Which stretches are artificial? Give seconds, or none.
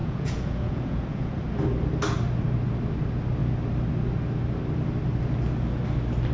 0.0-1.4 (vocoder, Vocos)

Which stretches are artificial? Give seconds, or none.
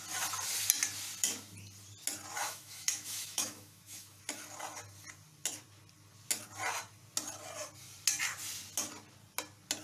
2.4-4.2 (autoencoder, DAC-VAE)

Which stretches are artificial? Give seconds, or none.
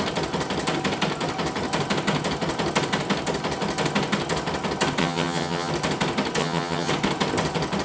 5.0-5.7 (vocoder, HiFi-GAN); 6.4-6.9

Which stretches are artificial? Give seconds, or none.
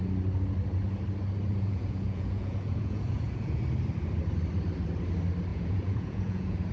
1.5-3.6 (vocoder, Vocos); 5.5-6.7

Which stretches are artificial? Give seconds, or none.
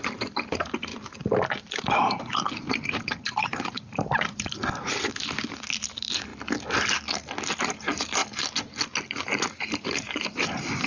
0.0-6.3 (vocoder, BigVGAN v2); 7.6-8.2; 9.1-10.9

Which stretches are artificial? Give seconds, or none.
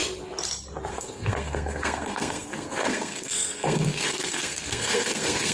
0.9-5.5 (codec, SNAC)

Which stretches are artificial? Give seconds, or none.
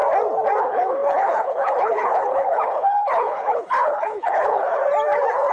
0.6-4.8 (codec, HILCodec)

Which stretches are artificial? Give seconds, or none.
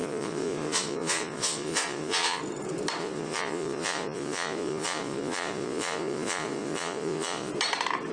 0.0-2.4 (vocoder, Vocos); 3.0-7.5